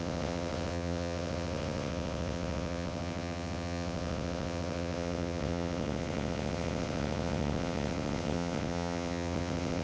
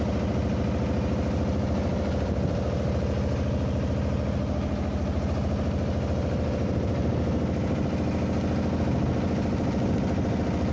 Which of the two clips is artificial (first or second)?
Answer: first